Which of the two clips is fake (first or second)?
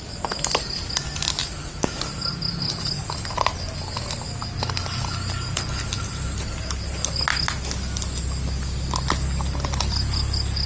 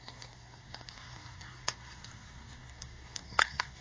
second